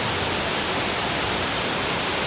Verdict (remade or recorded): recorded